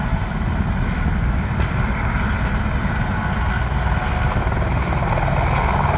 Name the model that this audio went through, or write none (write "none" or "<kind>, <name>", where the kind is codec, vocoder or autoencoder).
none